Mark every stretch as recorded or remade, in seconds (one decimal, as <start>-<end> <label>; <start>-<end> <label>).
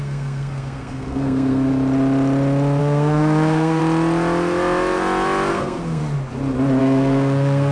0.0-1.7 remade; 1.7-2.8 recorded; 2.8-3.8 remade; 3.8-5.5 recorded; 5.5-6.0 remade; 6.0-6.8 recorded; 6.8-7.7 remade